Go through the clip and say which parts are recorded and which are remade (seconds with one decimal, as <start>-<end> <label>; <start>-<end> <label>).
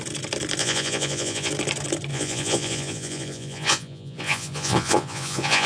0.0-0.6 recorded; 0.6-1.5 remade; 1.5-2.1 recorded; 2.1-5.7 remade